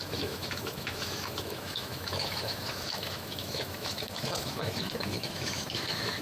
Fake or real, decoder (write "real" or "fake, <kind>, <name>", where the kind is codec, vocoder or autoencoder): fake, autoencoder, DAC-VAE